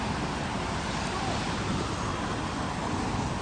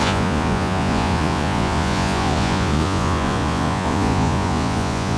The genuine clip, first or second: first